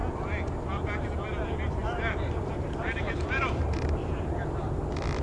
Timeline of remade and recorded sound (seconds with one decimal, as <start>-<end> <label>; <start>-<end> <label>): 0.0-1.8 recorded; 1.8-4.8 remade; 4.8-5.2 recorded